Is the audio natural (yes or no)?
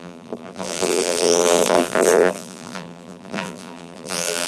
no